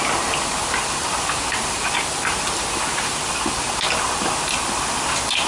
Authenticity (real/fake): real